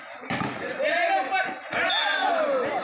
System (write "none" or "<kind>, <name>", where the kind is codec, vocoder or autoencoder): none